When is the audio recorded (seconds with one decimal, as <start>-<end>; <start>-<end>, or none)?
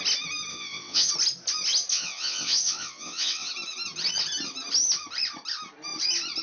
0.0-0.5; 1.1-1.9; 3.5-6.4